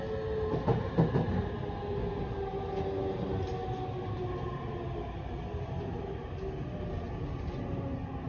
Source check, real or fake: real